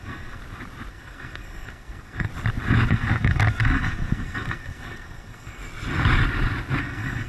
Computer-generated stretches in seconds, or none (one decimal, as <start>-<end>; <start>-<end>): 0.0-0.4; 0.9-2.3; 2.9-5.6; 6.8-7.3